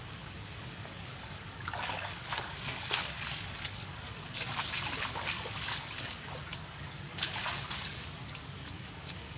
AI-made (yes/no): yes